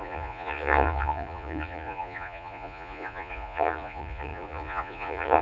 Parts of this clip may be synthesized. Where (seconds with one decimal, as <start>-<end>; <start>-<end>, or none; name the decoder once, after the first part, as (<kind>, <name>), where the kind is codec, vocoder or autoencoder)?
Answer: 0.0-5.4 (vocoder, Vocos)